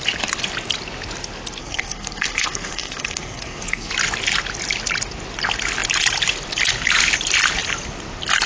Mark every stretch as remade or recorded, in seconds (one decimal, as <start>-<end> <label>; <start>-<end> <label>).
0.0-1.6 recorded; 1.6-3.9 remade; 3.9-8.5 recorded